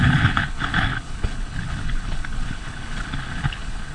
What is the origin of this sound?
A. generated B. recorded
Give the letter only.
A